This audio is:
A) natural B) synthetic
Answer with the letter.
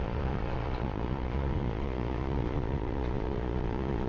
B